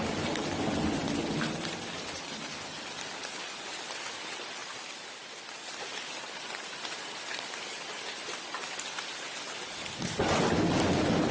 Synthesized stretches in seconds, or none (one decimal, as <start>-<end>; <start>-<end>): none